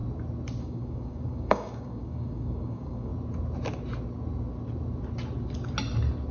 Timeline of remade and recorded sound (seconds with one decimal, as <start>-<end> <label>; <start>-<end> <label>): 0.0-0.6 recorded; 0.6-3.1 remade; 3.1-6.3 recorded